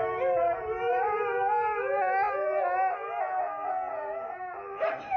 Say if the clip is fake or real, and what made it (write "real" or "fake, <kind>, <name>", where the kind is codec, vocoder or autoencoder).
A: real